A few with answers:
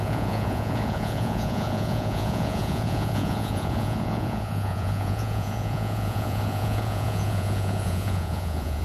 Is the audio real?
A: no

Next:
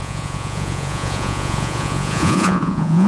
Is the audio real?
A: no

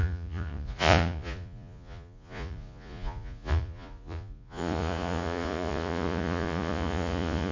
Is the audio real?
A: no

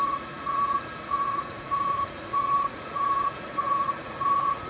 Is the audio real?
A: no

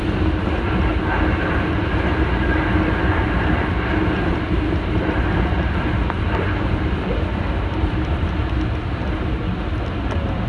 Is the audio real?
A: yes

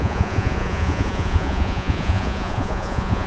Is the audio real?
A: no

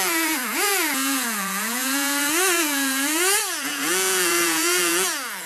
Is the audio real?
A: no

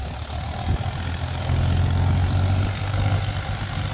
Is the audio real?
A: yes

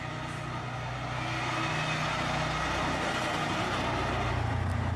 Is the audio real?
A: yes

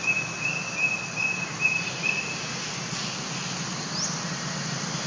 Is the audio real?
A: yes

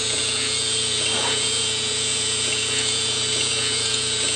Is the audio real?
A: no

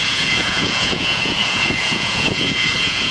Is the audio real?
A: no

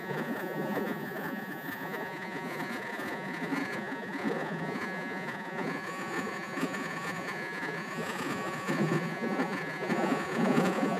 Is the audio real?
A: no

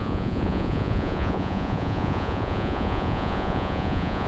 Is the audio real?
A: no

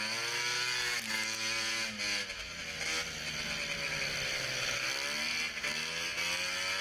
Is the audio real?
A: yes